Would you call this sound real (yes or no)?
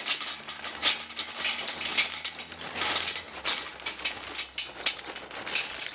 yes